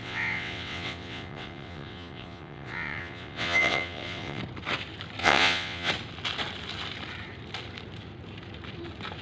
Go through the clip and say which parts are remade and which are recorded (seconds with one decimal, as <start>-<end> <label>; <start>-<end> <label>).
0.0-4.4 remade; 4.4-5.2 recorded; 5.2-5.9 remade; 5.9-9.2 recorded